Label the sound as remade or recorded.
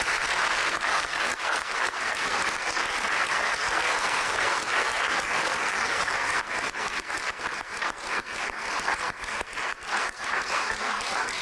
remade